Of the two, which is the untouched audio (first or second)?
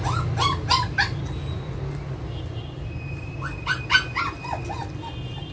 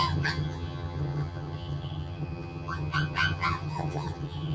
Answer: first